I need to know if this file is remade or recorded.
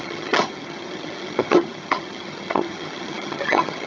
remade